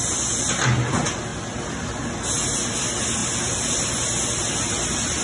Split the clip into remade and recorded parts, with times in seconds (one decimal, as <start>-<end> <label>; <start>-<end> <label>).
0.0-5.2 recorded